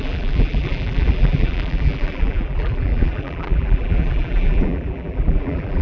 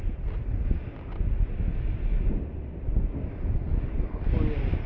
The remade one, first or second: first